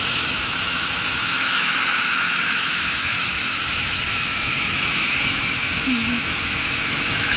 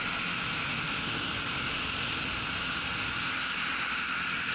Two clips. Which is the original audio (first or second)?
second